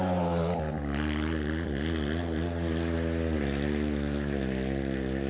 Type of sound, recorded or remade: recorded